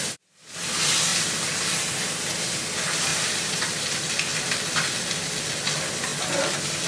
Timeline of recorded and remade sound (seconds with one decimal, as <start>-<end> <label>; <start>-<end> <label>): 0.0-3.1 recorded; 3.1-3.8 remade; 3.8-6.9 recorded